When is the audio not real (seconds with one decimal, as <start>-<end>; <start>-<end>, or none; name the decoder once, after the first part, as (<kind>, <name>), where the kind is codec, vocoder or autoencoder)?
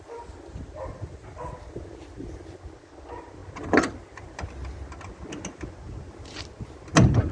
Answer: none